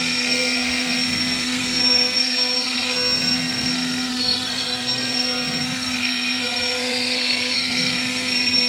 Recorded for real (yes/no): no